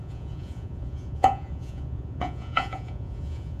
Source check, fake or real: fake